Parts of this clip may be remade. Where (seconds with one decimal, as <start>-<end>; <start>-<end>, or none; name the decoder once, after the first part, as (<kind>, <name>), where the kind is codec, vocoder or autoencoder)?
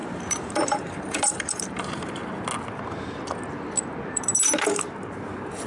0.0-2.2 (vocoder, BigVGAN v2); 4.0-5.7